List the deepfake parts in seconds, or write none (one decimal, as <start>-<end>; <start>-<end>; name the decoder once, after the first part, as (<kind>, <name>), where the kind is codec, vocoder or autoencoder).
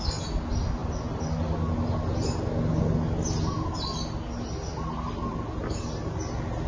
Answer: none